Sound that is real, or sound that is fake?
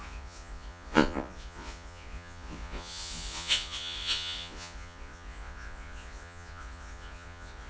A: fake